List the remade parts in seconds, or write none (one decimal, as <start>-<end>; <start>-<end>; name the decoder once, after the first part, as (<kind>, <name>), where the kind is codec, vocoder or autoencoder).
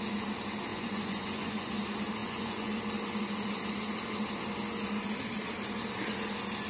0.7-1.7 (vocoder, Vocos); 2.2-2.7